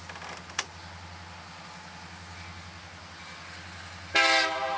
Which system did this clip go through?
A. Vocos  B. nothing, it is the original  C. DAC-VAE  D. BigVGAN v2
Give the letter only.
B